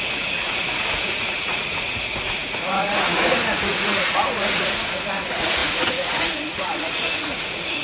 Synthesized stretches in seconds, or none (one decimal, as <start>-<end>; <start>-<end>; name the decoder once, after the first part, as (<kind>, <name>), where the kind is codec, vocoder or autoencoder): 0.0-7.8 (vocoder, Vocos)